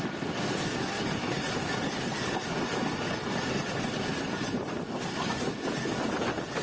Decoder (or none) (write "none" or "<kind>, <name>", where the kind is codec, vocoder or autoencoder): none